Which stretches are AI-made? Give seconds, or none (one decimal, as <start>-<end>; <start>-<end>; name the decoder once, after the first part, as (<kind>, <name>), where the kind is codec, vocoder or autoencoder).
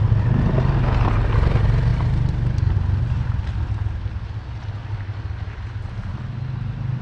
none